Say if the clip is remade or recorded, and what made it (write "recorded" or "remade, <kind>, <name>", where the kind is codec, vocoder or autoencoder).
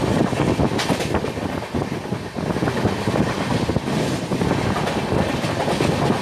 recorded